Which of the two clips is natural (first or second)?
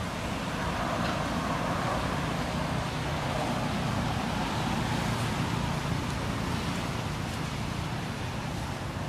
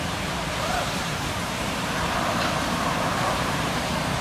first